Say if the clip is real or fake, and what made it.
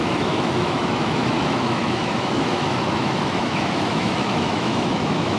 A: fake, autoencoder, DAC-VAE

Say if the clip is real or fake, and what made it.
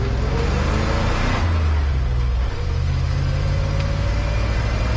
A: real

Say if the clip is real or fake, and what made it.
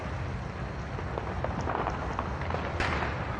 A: real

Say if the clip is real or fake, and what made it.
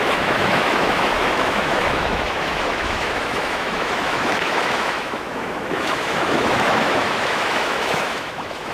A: fake, autoencoder, DAC-VAE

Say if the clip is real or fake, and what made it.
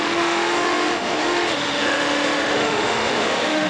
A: fake, autoencoder, DAC-VAE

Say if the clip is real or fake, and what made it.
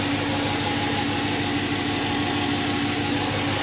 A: real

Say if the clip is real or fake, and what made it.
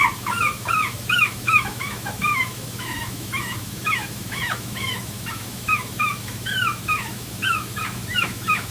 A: fake, autoencoder, DAC-VAE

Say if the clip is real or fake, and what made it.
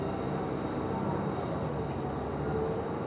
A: real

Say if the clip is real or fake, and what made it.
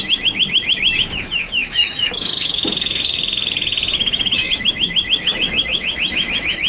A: fake, autoencoder, DAC-VAE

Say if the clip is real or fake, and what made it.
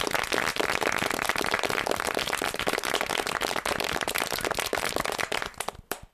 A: real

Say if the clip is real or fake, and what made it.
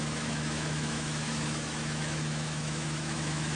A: fake, autoencoder, DAC-VAE